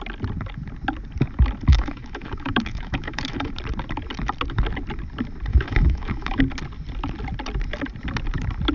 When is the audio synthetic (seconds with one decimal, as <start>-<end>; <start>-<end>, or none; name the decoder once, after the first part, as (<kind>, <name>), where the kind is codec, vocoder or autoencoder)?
1.7-3.5 (autoencoder, DAC-VAE); 5.5-6.4